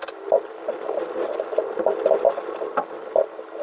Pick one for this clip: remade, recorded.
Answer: recorded